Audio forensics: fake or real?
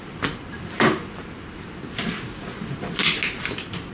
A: real